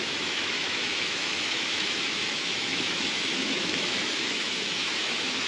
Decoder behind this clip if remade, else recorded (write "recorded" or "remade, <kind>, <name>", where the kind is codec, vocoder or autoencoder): remade, autoencoder, DAC-VAE